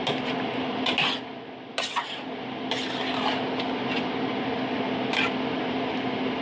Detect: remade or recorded recorded